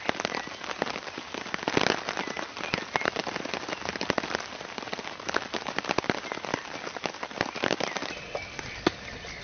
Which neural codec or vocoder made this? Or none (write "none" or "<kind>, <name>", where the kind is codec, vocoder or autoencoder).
none